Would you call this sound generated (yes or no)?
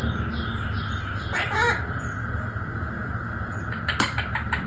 no